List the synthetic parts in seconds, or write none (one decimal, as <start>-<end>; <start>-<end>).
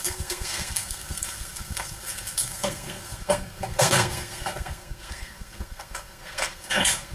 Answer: 0.0-7.1